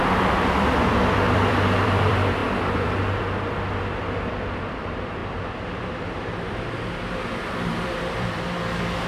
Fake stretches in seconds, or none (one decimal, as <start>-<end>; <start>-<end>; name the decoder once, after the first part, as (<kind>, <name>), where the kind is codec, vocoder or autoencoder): 0.0-9.1 (vocoder, BigVGAN v2)